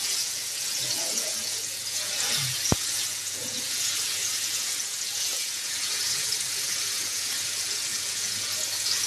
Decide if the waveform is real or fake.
fake